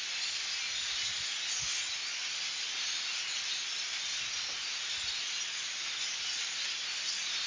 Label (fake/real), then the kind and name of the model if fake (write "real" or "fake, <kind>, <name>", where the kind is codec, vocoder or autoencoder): real